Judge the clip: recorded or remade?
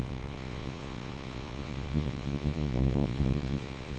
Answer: remade